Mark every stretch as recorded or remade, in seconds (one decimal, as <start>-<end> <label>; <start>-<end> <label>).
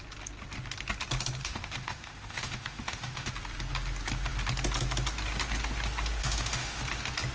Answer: 0.0-1.4 recorded; 1.4-3.3 remade; 3.3-6.2 recorded; 6.2-6.8 remade; 6.8-7.3 recorded